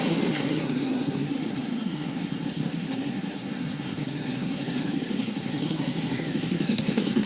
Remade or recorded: remade